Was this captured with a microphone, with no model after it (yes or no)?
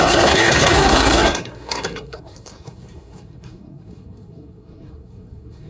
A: no